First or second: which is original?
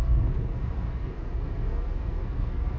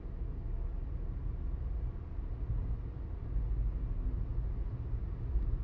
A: second